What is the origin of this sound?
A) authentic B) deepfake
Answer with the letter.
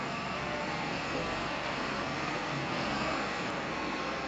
B